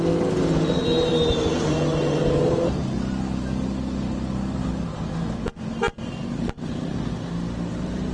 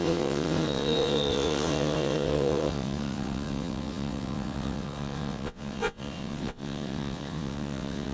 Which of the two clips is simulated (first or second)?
second